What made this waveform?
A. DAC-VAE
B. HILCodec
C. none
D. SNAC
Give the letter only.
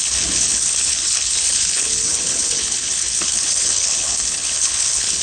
B